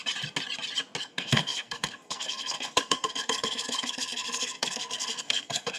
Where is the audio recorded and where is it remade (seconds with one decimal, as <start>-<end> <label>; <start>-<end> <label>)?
0.0-1.0 recorded; 1.0-5.8 remade